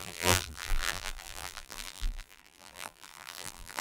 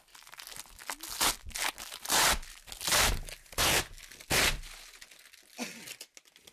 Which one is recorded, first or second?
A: second